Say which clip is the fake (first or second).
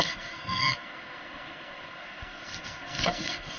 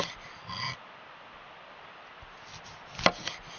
first